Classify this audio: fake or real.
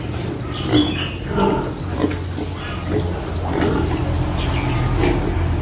real